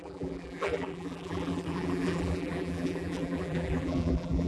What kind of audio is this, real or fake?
fake